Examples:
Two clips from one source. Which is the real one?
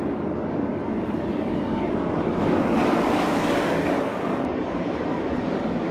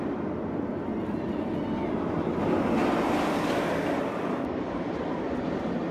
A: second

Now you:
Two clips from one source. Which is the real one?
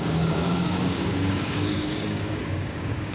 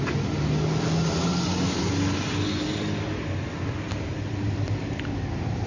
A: second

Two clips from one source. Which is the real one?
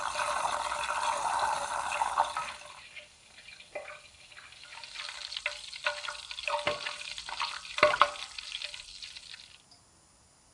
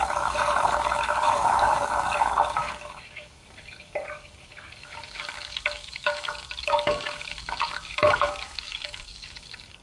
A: first